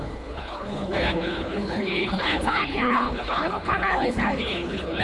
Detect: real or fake fake